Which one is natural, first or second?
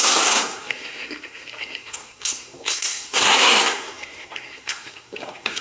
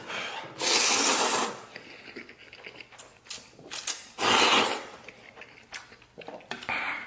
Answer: second